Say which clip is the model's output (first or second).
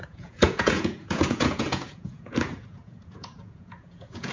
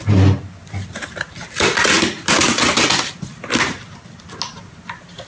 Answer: first